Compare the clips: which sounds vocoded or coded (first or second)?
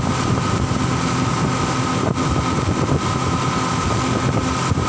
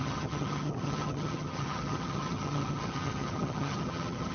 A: second